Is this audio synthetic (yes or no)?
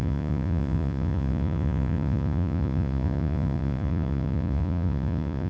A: yes